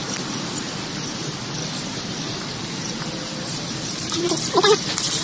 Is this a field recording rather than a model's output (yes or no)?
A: no